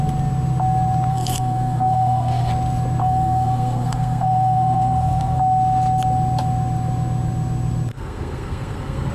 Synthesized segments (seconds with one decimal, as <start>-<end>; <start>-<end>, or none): 1.1-2.5; 3.0-5.4; 7.9-9.1